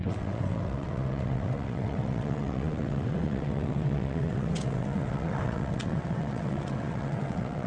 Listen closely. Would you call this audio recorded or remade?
remade